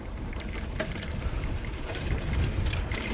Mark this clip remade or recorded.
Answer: remade